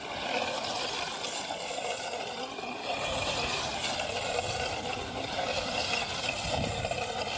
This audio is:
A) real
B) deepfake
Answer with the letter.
A